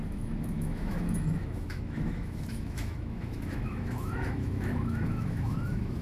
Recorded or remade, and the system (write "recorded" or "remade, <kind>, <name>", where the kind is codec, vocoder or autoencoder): remade, autoencoder, DAC-VAE